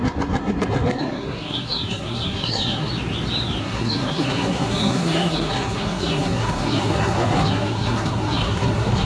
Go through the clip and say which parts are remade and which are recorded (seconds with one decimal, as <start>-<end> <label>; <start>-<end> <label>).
0.0-2.9 remade; 2.9-3.6 recorded; 3.6-9.0 remade